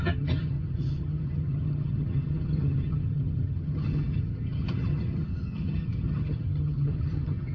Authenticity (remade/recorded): remade